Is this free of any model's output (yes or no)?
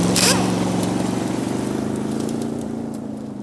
no